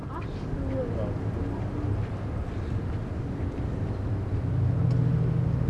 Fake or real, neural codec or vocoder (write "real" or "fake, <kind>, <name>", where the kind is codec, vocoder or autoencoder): real